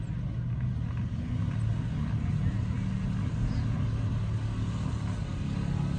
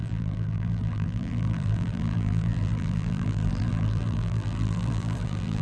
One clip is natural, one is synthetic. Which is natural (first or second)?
first